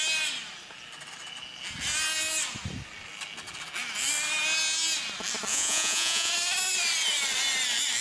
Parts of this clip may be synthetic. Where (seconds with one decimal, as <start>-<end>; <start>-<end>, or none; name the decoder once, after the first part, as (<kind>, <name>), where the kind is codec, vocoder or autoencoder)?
5.5-6.3 (vocoder, Vocos)